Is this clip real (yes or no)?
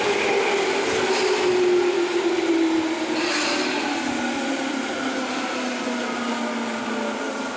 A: yes